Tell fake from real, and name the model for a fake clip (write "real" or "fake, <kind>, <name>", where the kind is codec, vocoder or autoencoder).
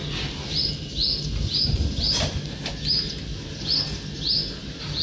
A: real